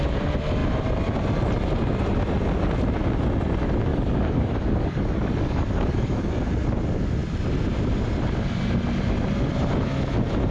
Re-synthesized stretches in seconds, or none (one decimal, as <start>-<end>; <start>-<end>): 3.9-6.3